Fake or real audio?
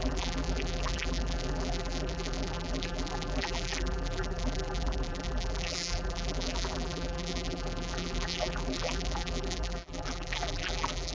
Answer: fake